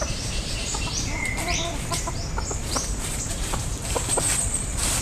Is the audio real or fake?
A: fake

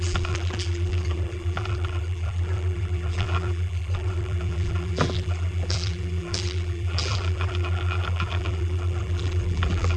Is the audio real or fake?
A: fake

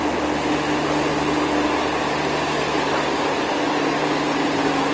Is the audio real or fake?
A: real